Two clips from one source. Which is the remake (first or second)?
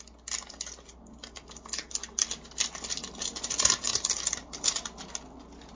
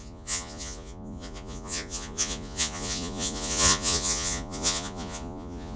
second